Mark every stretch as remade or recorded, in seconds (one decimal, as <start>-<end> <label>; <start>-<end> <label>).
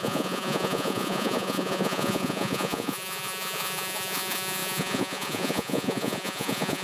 0.0-6.8 remade